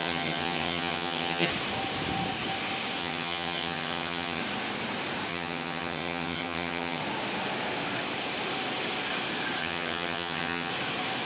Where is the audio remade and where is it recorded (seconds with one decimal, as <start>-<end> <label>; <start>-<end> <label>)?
0.0-1.5 remade; 1.5-3.0 recorded; 3.0-4.4 remade; 4.4-5.3 recorded; 5.3-7.0 remade; 7.0-9.6 recorded; 9.6-10.7 remade; 10.7-11.2 recorded